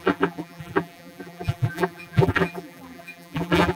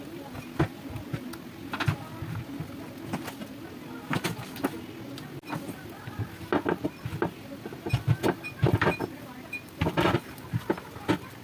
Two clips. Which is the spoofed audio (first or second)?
first